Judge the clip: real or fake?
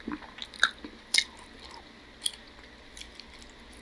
real